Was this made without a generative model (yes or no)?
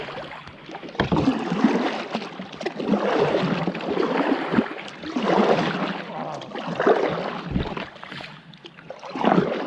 yes